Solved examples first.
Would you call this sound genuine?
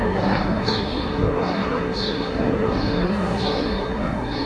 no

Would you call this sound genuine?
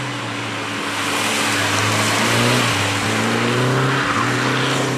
yes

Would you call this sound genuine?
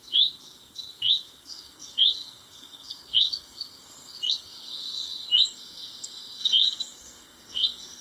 no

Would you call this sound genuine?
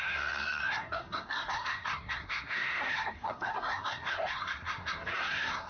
no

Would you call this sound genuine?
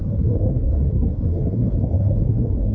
no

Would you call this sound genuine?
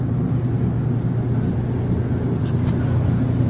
yes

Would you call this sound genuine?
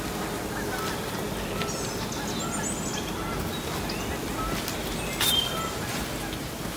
yes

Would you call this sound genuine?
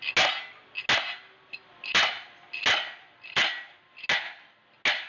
yes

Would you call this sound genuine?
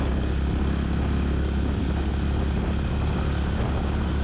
yes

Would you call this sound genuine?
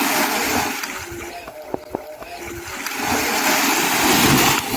yes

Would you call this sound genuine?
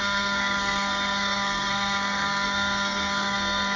no